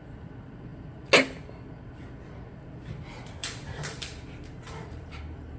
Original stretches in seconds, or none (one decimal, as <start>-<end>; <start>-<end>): 0.0-3.4